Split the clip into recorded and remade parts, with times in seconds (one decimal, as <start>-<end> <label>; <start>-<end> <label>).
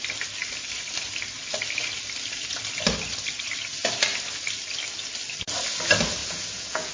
0.0-6.2 recorded; 6.2-6.9 remade